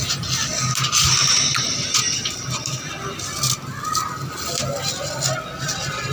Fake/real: real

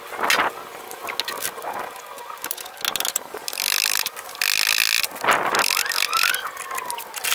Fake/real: real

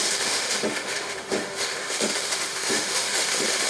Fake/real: fake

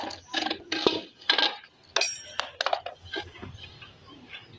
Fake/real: real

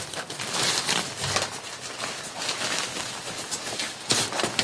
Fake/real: real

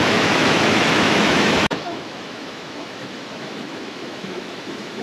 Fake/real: fake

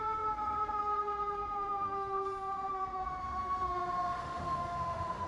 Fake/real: fake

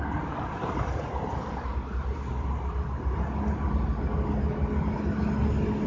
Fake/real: real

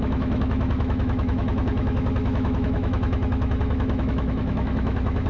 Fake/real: fake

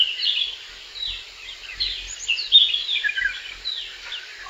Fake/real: real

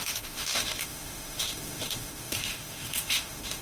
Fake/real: fake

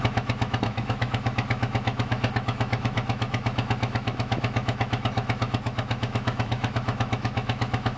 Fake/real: fake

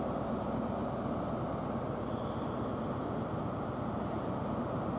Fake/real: real